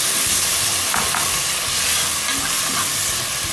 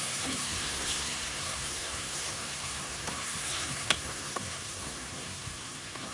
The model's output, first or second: second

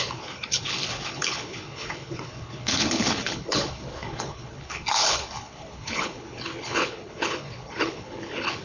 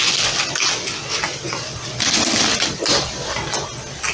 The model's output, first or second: first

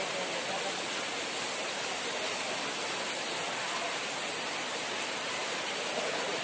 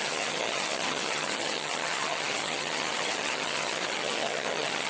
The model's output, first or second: second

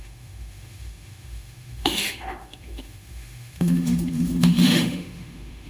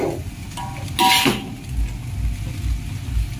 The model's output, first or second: first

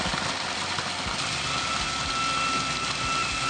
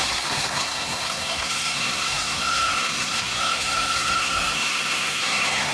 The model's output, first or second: second